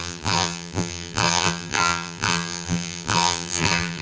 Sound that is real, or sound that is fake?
fake